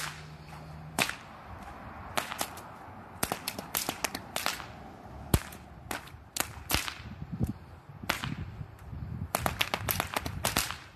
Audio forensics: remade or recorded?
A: recorded